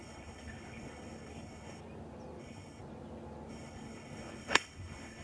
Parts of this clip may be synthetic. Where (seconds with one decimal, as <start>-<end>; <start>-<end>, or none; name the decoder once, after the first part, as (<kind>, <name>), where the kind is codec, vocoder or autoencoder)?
0.0-1.8 (codec, HILCodec); 2.4-2.8; 3.5-5.2